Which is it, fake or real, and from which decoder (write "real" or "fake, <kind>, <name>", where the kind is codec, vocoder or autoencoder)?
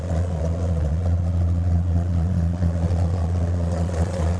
fake, vocoder, Vocos